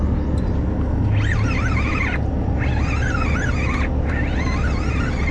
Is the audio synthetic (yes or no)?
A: no